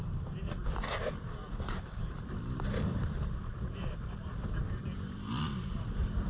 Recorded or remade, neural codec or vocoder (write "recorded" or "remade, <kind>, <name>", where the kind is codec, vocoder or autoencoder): remade, vocoder, BigVGAN v2